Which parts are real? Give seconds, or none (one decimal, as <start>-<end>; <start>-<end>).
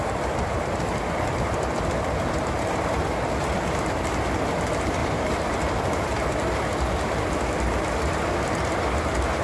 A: 0.0-5.0; 5.8-9.4